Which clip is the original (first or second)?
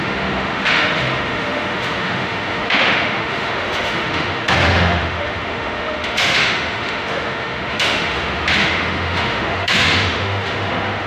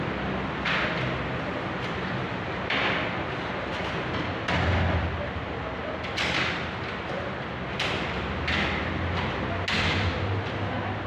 second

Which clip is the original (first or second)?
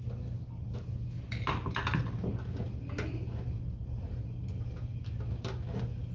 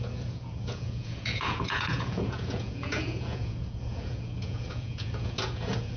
first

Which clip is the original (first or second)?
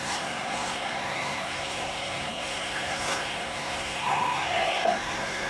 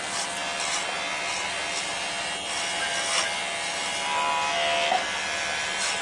second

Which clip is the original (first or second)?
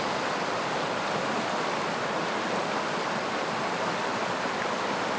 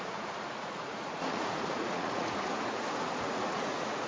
first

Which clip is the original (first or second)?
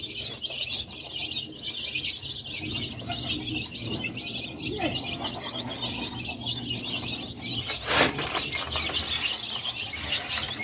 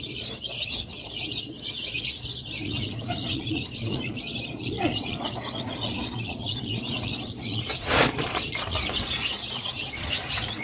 first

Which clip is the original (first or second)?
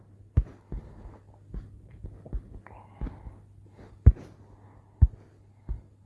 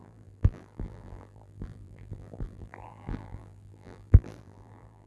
first